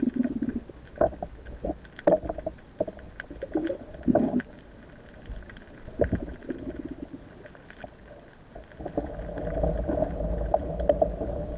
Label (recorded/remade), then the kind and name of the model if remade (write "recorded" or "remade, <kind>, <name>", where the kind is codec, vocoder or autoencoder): recorded